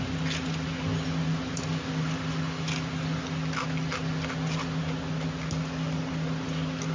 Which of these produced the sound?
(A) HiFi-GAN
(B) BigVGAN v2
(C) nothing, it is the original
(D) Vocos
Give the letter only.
C